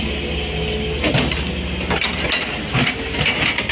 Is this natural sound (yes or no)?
yes